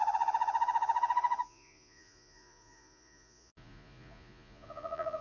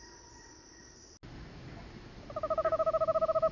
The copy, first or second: first